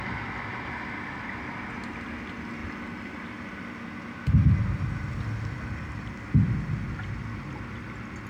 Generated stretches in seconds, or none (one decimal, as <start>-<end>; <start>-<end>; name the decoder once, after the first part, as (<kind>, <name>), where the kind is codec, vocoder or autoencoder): none